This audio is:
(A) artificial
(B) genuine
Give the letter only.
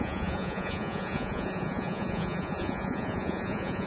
A